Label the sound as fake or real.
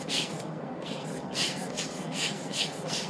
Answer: fake